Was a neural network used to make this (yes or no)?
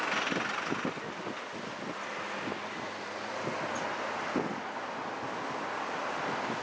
no